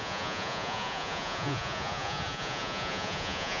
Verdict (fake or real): fake